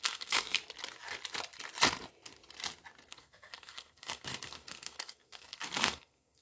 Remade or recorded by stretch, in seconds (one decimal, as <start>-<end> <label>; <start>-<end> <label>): 0.0-0.6 remade; 0.6-3.1 recorded; 3.1-6.4 remade